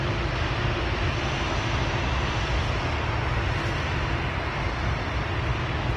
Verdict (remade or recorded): recorded